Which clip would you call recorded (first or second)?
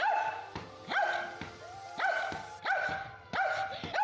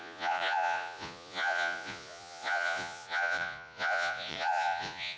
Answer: first